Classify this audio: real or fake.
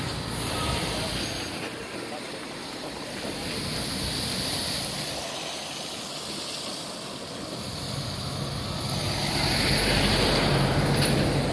real